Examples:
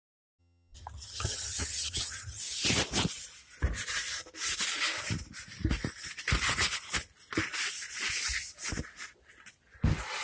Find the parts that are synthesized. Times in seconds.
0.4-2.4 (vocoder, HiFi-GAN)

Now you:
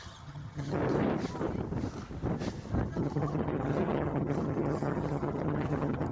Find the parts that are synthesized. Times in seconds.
0.0-0.8 (vocoder, HiFi-GAN); 2.9-6.1